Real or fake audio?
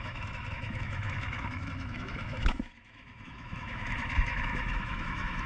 fake